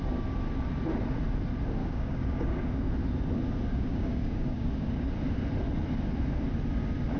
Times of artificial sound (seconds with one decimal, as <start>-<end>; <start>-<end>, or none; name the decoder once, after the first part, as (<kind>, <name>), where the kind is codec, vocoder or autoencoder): 1.8-2.9 (codec, DAC); 3.7-5.1